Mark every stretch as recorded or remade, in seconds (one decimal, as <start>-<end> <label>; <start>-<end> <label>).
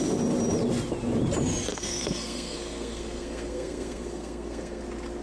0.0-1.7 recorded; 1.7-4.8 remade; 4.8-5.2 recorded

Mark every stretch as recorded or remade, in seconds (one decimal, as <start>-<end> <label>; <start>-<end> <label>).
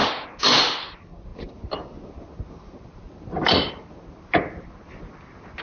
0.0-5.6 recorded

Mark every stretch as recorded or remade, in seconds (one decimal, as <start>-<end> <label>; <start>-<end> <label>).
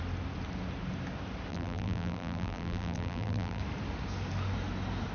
0.0-1.5 recorded; 1.5-3.6 remade; 3.6-5.1 recorded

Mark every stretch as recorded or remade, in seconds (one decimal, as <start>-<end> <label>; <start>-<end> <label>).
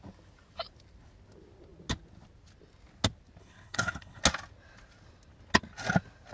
0.0-3.4 recorded; 3.4-4.2 remade; 4.2-6.3 recorded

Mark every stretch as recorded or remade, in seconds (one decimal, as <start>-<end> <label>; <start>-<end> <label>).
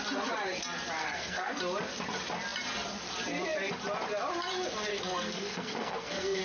0.0-1.0 recorded; 1.0-1.6 remade; 1.6-4.9 recorded; 4.9-6.4 remade